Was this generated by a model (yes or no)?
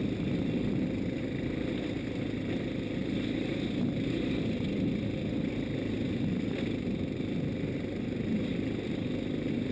no